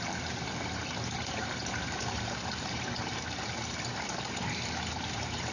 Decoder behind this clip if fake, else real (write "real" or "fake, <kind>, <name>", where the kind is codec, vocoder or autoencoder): real